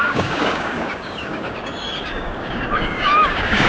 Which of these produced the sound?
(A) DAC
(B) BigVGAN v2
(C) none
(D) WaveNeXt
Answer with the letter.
A